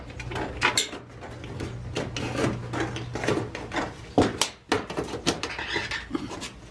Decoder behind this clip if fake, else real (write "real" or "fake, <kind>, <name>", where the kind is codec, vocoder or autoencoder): real